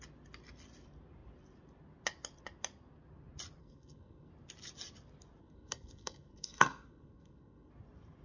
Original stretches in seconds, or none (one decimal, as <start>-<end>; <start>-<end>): 0.0-3.6; 4.3-5.4; 7.7-8.2